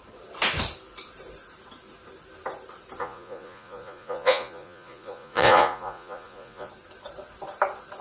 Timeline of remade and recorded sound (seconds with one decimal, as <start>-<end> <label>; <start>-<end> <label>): 0.0-3.0 recorded; 3.0-6.7 remade; 6.7-8.0 recorded